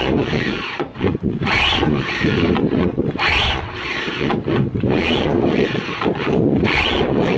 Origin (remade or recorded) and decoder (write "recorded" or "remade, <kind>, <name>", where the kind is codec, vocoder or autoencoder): remade, vocoder, Vocos